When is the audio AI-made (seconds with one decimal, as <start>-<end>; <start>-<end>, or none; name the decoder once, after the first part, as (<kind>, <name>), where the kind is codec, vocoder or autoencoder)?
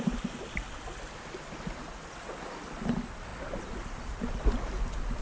none